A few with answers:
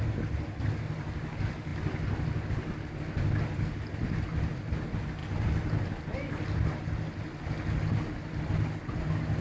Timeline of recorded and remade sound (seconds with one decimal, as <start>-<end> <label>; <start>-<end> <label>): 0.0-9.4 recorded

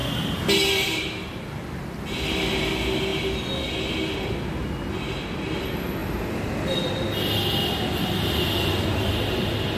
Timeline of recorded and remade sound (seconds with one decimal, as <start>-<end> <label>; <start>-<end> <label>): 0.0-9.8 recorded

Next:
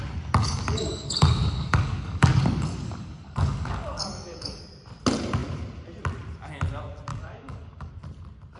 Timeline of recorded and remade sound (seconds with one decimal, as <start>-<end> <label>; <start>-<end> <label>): 0.0-0.4 recorded; 0.4-4.6 remade; 4.6-7.1 recorded; 7.1-7.9 remade; 7.9-8.6 recorded